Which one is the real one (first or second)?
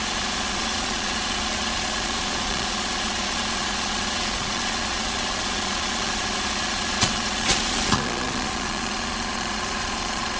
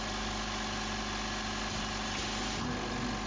second